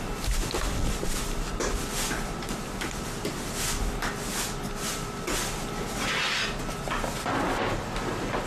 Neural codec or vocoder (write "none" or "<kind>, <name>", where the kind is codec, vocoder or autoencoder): none